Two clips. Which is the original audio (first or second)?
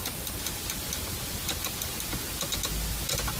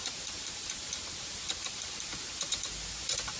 first